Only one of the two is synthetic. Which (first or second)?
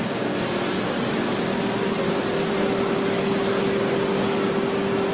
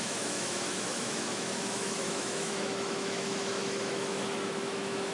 second